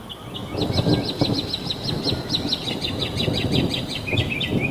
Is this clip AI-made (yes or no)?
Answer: no